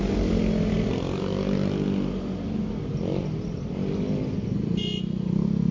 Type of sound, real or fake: real